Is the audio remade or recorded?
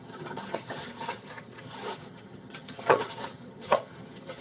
remade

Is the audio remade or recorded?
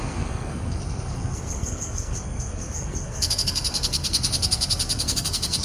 remade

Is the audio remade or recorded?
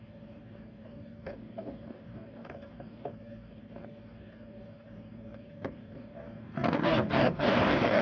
remade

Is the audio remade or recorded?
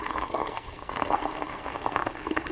remade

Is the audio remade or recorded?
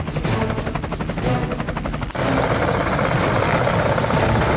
recorded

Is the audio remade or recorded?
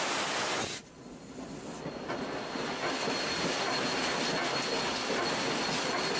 recorded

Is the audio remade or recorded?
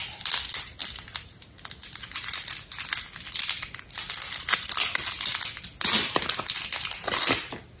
recorded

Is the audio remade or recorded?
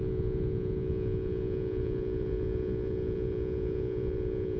remade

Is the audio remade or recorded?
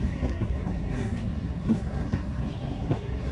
remade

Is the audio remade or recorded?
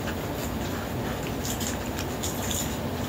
recorded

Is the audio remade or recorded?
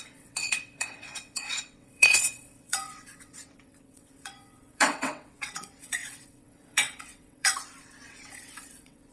remade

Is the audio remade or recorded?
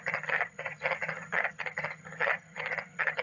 remade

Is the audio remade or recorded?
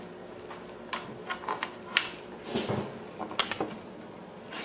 recorded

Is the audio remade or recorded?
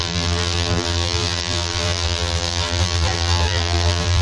remade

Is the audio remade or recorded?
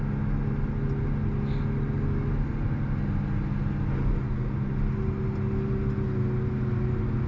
recorded